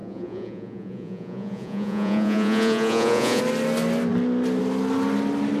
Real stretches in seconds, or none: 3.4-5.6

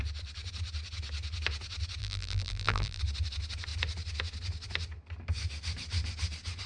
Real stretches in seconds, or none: 0.0-2.0; 3.0-6.7

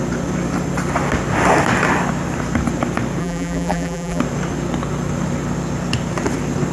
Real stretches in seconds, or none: 0.0-3.2; 4.2-6.7

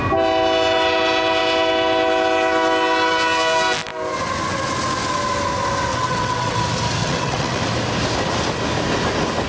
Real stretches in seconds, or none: 0.0-5.9; 6.6-7.0; 7.6-9.5

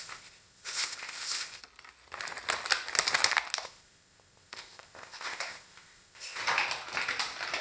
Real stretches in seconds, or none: 1.6-3.6; 6.4-7.6

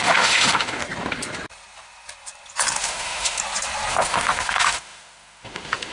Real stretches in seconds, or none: 0.8-2.8; 3.4-3.9

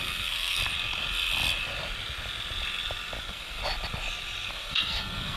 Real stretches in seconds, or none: 0.6-3.2; 3.6-4.5

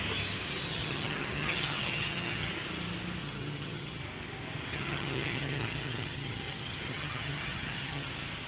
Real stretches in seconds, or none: 0.0-0.7; 2.5-3.2; 4.0-4.7; 8.1-8.5